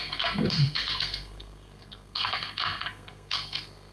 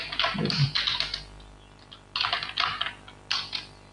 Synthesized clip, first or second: first